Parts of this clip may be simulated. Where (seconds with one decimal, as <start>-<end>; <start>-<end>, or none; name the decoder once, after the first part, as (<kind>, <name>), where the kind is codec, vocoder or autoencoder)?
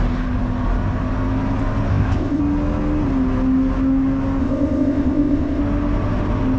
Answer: 1.9-2.4 (codec, ZipCodec); 4.4-5.6